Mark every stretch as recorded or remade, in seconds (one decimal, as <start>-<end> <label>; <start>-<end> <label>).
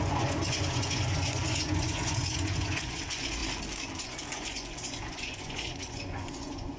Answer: 0.0-3.4 remade; 3.4-4.0 recorded; 4.0-6.8 remade